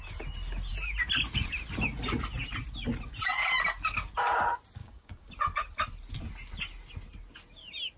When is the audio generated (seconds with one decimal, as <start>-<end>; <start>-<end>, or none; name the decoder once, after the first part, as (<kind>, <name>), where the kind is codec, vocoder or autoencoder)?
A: 4.8-5.3 (codec, DAC)

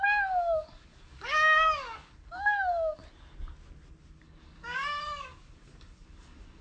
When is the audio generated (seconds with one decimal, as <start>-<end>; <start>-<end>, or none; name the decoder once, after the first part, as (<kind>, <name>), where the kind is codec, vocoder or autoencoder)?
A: 0.0-3.0 (codec, DAC); 4.2-6.6

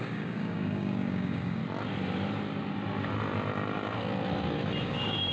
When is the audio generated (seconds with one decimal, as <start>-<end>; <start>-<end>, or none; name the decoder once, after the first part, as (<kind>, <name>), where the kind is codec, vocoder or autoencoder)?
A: 0.0-1.6 (codec, DAC); 4.8-5.3

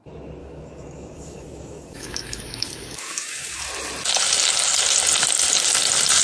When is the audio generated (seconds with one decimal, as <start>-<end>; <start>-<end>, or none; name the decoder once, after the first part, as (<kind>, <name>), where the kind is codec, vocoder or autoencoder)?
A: 0.4-3.6 (codec, DAC)

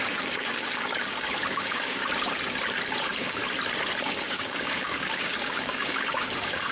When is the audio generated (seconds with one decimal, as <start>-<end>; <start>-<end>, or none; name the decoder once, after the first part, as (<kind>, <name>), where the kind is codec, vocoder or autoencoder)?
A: 0.0-2.0 (codec, DAC); 3.0-3.4; 4.0-6.7